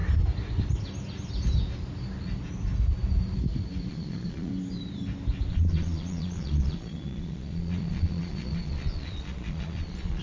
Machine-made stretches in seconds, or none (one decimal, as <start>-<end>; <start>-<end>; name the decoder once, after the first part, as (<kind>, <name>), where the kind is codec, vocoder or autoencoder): 3.9-4.5 (vocoder, Vocos); 5.5-10.2